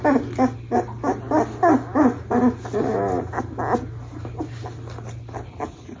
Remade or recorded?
recorded